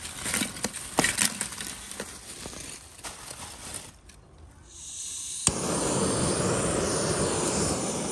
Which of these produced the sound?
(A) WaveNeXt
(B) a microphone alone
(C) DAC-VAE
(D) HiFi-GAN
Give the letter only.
B